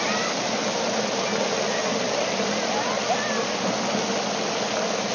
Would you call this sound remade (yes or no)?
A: no